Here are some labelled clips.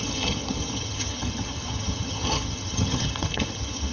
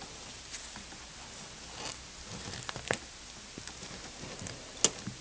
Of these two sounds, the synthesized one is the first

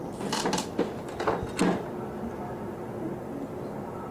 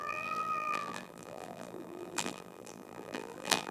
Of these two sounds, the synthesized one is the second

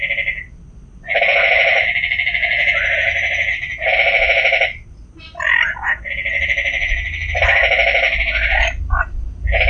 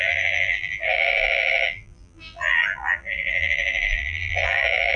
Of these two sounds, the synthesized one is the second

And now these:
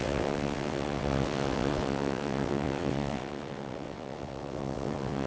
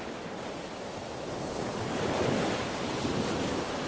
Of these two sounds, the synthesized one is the first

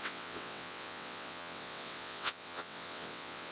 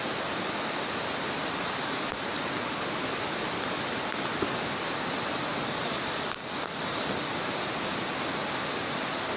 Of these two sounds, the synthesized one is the first